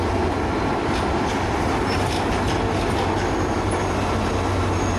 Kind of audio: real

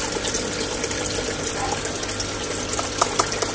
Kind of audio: real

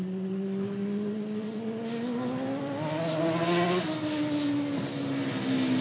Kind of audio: real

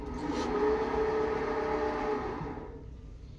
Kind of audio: real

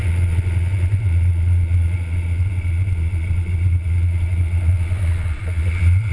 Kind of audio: fake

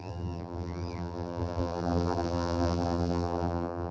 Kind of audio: fake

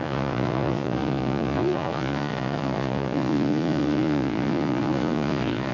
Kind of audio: fake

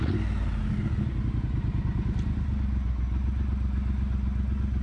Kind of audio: real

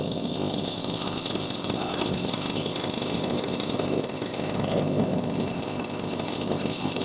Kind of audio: fake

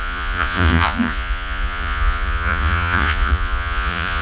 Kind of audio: fake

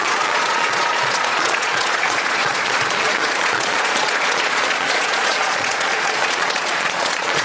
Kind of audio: fake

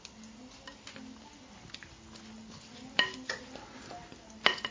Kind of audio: real